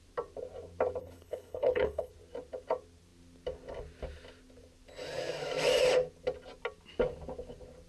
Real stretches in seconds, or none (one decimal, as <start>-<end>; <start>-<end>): 0.0-1.0; 2.1-7.9